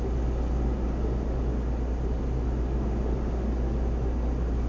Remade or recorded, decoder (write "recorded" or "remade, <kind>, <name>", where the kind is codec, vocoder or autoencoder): recorded